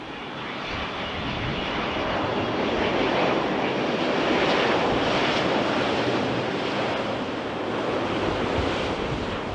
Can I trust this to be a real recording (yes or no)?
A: yes